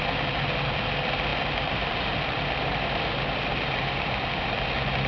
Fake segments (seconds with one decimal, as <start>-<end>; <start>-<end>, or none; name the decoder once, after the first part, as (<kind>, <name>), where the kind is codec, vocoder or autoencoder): 1.3-4.4 (vocoder, BigVGAN v2)